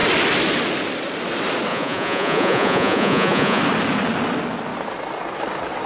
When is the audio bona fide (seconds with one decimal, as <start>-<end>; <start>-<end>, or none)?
0.0-1.7; 3.6-5.9